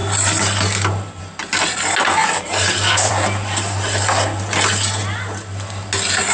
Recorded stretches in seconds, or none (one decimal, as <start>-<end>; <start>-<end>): 0.0-6.3